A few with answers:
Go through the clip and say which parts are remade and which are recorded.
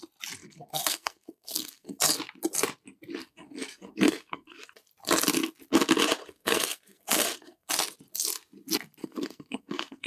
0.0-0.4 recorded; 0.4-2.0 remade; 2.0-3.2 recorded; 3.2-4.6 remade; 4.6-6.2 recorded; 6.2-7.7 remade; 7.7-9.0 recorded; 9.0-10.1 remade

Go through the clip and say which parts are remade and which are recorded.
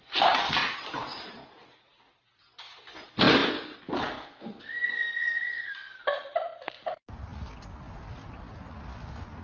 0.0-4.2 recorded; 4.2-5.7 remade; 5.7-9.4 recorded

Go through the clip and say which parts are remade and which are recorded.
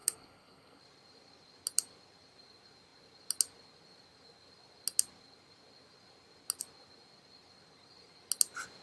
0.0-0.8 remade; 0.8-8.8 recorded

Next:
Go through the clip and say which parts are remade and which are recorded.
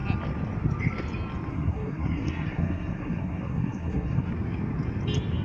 0.0-1.5 recorded; 1.5-4.3 remade; 4.3-5.4 recorded